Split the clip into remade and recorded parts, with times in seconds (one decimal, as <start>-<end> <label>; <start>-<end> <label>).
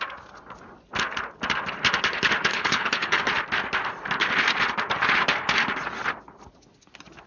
0.0-2.5 recorded; 2.5-3.2 remade; 3.2-7.3 recorded